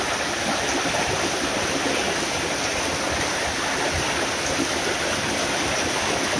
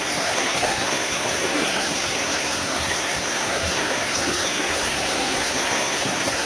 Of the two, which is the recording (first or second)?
first